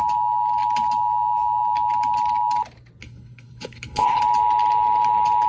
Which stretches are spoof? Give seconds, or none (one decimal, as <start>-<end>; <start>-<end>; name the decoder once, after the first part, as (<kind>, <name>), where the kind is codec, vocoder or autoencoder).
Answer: 3.0-4.2 (codec, HILCodec)